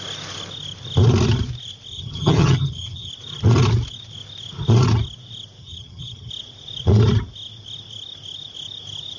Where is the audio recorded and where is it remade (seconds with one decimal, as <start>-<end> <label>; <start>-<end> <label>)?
0.0-1.9 recorded; 1.9-3.1 remade; 3.1-5.6 recorded; 5.6-6.3 remade; 6.3-9.2 recorded